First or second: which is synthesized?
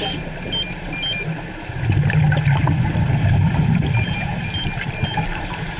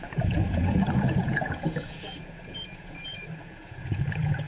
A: second